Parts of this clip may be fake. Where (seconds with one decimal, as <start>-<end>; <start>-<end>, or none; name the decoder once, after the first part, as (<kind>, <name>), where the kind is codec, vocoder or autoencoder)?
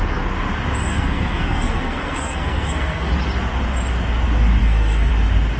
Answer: 0.9-3.1 (codec, SNAC); 4.6-5.1